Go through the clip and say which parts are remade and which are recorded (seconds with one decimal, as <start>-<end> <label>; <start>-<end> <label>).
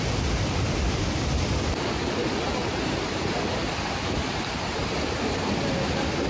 0.0-2.6 remade; 2.6-3.2 recorded; 3.2-4.8 remade; 4.8-5.7 recorded; 5.7-6.3 remade